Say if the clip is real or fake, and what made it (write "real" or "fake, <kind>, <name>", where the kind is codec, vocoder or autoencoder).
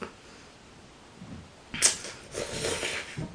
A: real